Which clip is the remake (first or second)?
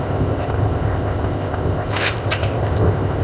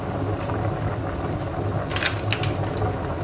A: first